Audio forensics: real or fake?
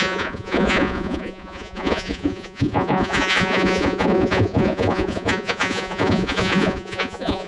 fake